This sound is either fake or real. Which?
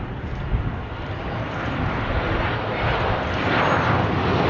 real